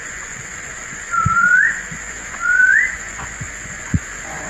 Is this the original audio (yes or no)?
no